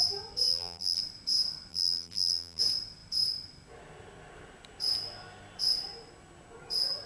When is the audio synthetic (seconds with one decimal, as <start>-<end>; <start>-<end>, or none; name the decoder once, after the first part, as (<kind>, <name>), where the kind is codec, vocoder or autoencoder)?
0.5-1.0 (vocoder, BigVGAN v2); 1.7-2.6